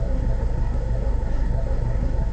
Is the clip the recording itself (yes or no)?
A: no